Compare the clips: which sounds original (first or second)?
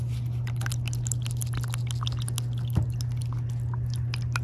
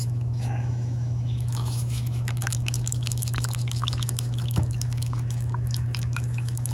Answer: first